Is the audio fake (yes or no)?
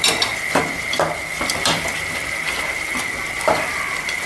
yes